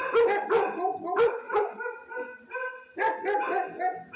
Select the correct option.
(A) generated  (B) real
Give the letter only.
B